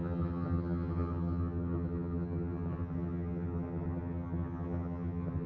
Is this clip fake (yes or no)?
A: yes